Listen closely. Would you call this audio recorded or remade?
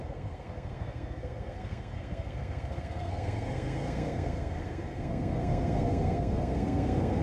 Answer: remade